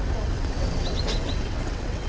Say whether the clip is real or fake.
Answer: fake